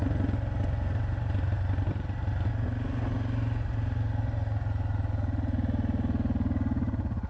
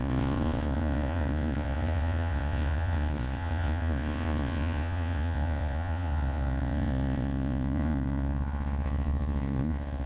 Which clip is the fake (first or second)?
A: second